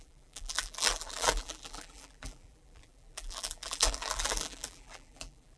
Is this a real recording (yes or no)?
no